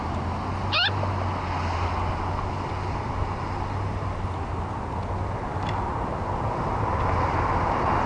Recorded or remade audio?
recorded